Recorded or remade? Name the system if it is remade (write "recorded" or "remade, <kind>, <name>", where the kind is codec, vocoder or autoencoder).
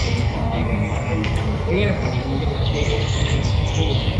remade, codec, SNAC